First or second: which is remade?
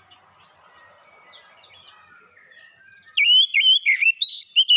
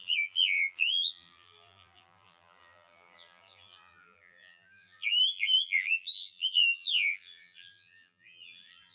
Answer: second